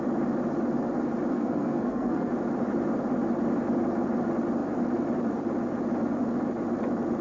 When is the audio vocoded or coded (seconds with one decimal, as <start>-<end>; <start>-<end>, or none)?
1.3-2.3